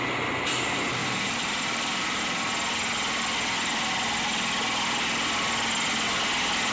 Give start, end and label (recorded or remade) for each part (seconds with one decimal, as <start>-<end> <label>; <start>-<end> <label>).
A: 0.0-1.0 recorded; 1.0-2.5 remade; 2.5-6.7 recorded